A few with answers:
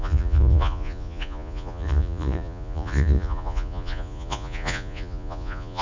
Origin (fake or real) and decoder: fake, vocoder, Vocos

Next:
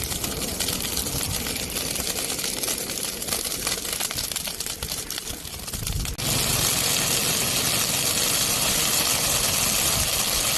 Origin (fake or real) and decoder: real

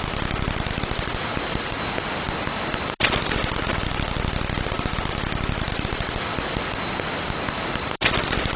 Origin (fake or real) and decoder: real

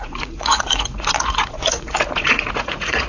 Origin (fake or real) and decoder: fake, vocoder, Vocos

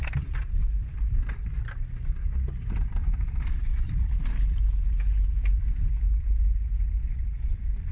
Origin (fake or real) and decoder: fake, vocoder, BigVGAN v2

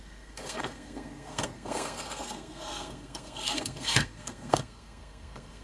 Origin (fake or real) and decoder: fake, codec, SNAC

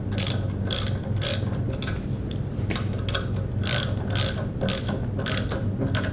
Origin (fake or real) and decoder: real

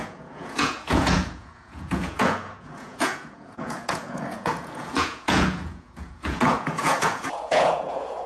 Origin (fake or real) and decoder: fake, vocoder, Vocos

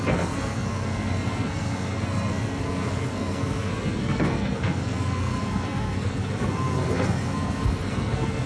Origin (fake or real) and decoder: fake, codec, SNAC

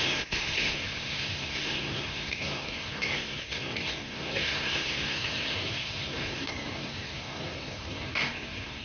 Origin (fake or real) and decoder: fake, codec, SNAC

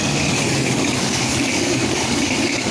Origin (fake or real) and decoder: fake, codec, DAC